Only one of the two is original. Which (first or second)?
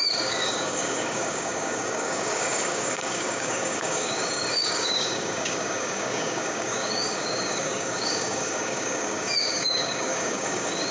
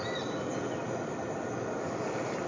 second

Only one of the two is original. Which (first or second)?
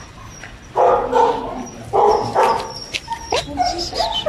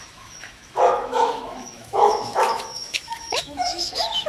first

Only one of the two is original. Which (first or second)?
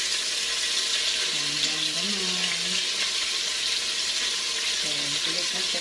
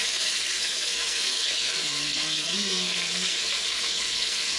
first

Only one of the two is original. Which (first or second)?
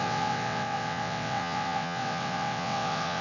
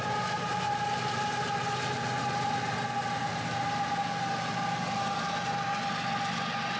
second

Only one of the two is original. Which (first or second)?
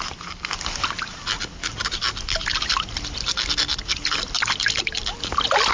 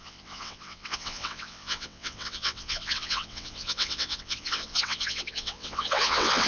first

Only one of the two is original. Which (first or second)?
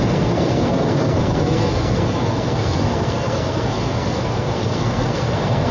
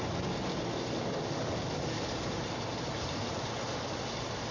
second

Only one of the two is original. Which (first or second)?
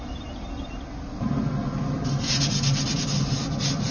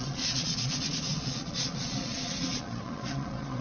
first